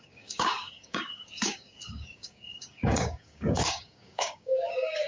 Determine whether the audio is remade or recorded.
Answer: remade